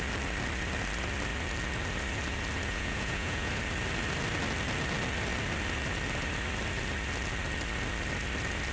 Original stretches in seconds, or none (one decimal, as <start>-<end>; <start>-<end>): 0.0-2.7; 3.5-8.7